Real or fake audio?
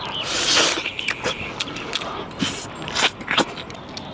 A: real